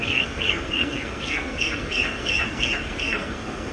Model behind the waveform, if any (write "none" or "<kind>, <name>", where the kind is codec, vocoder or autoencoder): codec, SNAC